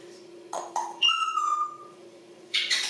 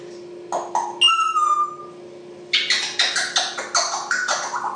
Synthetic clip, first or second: first